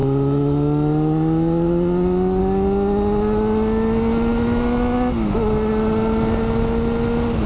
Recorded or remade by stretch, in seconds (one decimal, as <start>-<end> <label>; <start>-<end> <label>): 0.0-7.5 recorded